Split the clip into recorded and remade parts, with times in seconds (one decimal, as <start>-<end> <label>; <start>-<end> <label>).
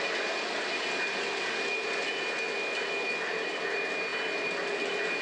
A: 0.0-5.2 recorded